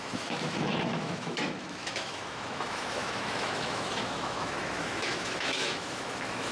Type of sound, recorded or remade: remade